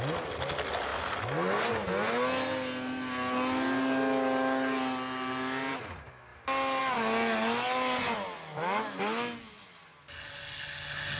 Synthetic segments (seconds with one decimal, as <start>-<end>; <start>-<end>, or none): none